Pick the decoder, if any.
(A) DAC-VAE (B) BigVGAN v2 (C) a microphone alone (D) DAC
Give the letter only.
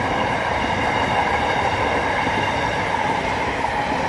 B